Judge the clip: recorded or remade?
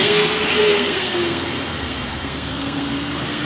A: remade